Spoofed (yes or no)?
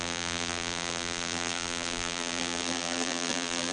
yes